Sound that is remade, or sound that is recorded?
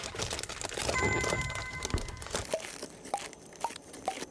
recorded